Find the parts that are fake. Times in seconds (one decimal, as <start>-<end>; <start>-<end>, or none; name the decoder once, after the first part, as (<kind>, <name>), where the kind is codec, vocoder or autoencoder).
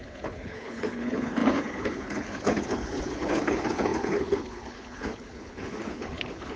0.0-6.6 (codec, HILCodec)